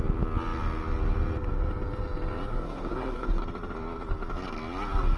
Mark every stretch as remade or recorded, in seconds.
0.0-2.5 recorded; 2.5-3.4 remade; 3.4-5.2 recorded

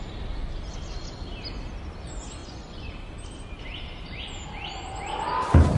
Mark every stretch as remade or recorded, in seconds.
0.0-2.4 recorded; 2.4-2.9 remade; 2.9-5.8 recorded

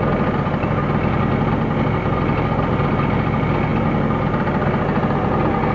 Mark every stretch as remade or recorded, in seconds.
0.0-5.7 recorded

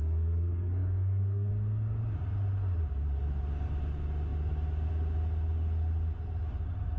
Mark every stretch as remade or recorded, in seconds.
0.0-1.5 remade; 1.5-7.0 recorded

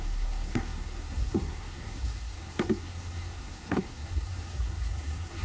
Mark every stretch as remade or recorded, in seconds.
0.0-5.4 remade

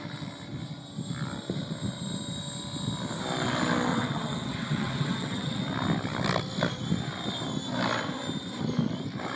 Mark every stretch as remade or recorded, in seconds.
0.0-3.9 recorded; 3.9-5.6 remade; 5.6-9.4 recorded

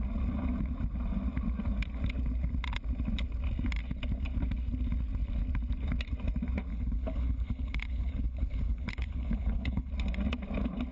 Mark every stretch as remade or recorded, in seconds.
0.0-6.7 recorded; 6.7-9.9 remade; 9.9-10.9 recorded